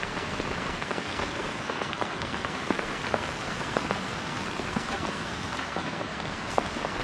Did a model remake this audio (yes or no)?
yes